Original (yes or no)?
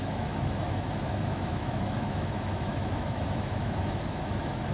no